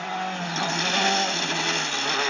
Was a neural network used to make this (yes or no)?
no